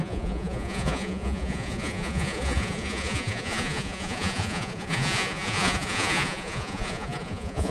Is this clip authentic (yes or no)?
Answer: no